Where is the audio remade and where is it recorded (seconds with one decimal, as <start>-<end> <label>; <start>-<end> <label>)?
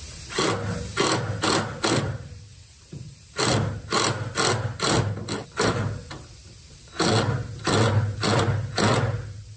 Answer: 0.0-2.5 recorded; 2.5-3.4 remade; 3.4-9.6 recorded